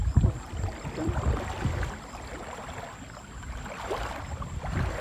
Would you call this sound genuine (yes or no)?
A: yes